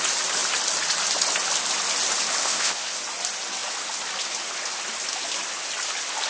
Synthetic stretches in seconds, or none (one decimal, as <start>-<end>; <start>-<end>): 2.4-3.0